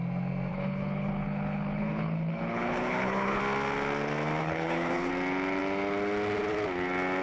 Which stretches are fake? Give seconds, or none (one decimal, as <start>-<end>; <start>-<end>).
0.5-3.4; 4.4-5.1